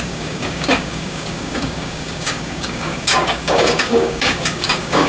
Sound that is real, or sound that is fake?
fake